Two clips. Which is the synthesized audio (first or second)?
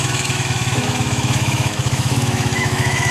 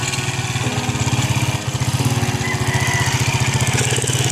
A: first